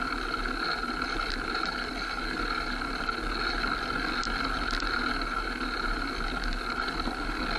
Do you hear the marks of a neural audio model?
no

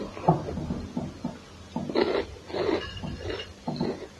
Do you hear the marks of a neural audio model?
no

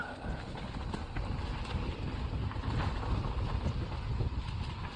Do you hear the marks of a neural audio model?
no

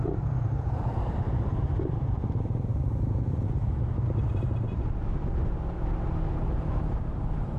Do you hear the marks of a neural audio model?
yes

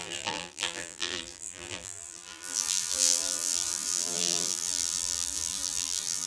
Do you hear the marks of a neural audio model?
yes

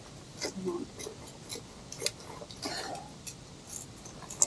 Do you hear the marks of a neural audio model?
no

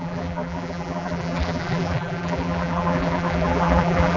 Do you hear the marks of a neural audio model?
yes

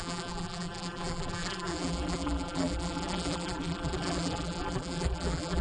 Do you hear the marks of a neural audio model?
yes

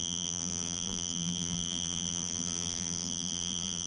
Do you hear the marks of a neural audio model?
yes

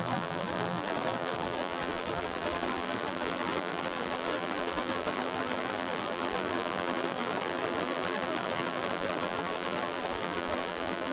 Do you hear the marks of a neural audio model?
yes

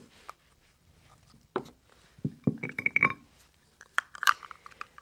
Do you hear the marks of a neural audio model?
yes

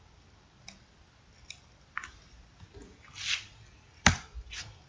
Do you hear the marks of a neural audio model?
yes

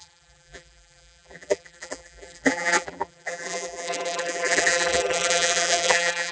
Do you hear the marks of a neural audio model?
yes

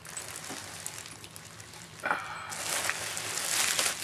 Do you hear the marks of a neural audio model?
no